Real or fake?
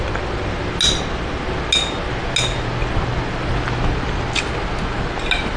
real